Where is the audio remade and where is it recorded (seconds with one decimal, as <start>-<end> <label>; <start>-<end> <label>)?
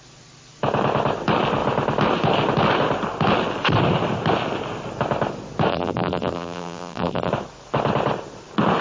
0.0-5.7 recorded; 5.7-7.3 remade; 7.3-8.8 recorded